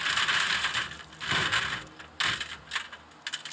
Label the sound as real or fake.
real